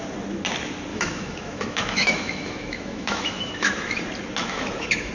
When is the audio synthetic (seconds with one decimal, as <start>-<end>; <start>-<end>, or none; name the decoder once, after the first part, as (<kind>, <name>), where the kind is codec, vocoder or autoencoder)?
0.9-4.0 (autoencoder, DAC-VAE); 4.4-5.1